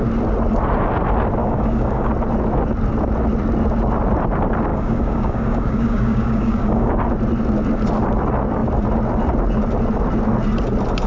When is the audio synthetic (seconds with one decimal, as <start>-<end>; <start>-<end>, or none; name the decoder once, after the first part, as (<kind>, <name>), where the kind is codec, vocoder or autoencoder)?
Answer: 1.4-2.1 (codec, DAC); 4.7-6.9